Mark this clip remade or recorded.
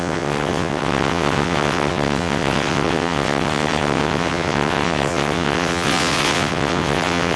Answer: remade